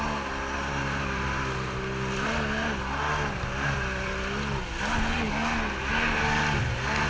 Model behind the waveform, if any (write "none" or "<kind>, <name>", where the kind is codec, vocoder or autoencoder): none